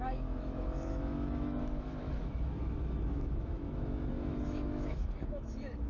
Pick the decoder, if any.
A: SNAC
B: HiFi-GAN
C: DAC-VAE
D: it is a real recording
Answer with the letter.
C